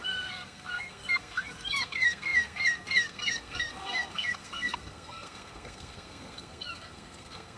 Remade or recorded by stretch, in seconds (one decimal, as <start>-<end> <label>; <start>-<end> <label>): 0.0-7.6 remade